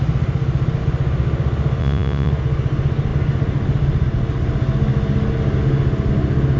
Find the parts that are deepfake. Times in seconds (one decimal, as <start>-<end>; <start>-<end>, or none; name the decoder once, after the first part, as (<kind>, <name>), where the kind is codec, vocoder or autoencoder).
1.8-2.3 (vocoder, Vocos)